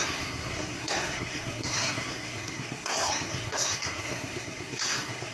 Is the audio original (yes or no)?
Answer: no